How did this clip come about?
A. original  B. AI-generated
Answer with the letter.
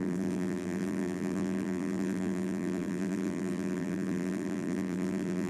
B